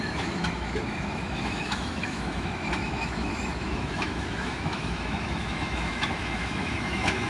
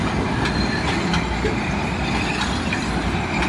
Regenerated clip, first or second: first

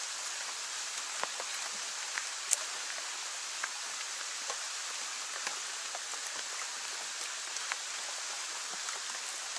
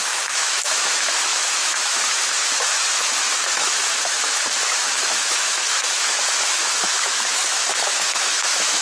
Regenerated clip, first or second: second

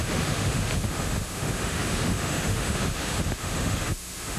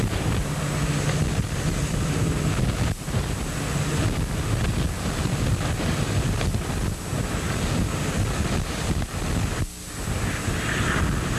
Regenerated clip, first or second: first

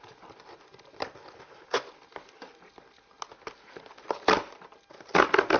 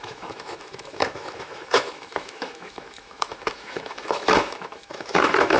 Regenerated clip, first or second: second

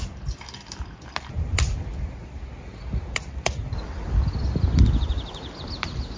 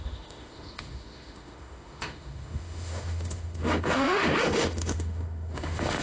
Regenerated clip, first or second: second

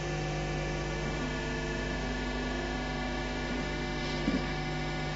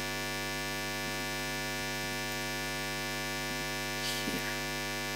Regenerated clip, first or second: first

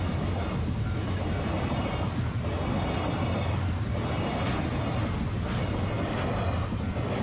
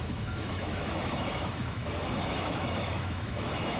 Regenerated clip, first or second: second